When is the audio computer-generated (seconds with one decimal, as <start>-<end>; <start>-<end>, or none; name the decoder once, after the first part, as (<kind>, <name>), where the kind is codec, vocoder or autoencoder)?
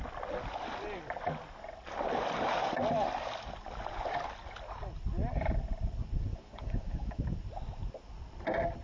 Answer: 6.3-7.2 (autoencoder, DAC-VAE)